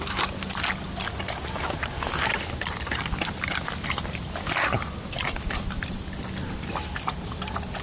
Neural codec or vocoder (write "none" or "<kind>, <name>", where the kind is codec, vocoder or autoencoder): none